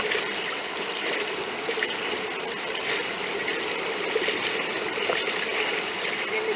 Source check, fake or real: real